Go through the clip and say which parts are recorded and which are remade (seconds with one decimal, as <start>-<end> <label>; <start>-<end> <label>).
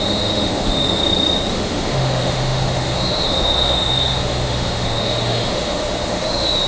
0.0-1.0 remade; 1.0-1.5 recorded; 1.5-6.7 remade